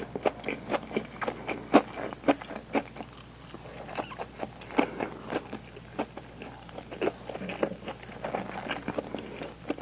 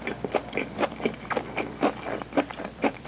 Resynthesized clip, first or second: second